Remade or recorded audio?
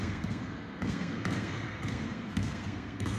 remade